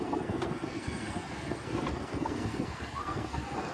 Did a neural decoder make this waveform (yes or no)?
yes